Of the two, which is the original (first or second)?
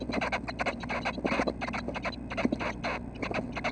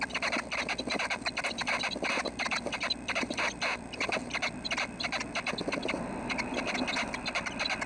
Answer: first